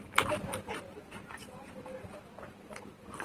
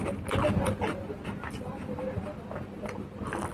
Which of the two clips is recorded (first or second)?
second